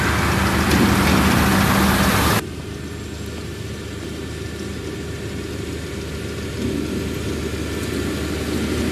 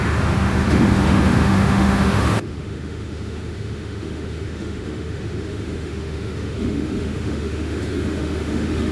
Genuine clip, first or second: first